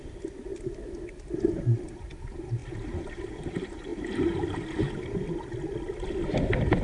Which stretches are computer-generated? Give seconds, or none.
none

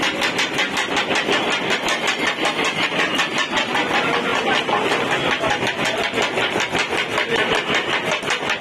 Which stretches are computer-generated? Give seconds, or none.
0.0-4.3 (vocoder, BigVGAN v2); 5.6-7.1; 7.9-8.6